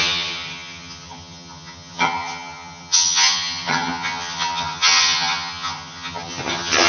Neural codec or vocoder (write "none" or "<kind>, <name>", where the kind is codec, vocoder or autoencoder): vocoder, HiFi-GAN